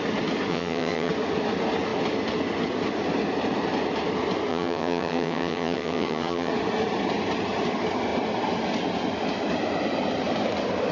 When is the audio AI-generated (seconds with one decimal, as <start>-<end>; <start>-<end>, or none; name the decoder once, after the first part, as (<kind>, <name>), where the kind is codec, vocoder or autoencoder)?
0.5-1.1 (vocoder, HiFi-GAN); 4.5-6.5